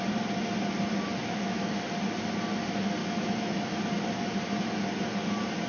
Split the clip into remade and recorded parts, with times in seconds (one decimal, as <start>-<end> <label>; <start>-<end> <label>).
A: 0.0-1.2 recorded; 1.2-1.8 remade; 1.8-3.0 recorded; 3.0-3.8 remade; 3.8-5.7 recorded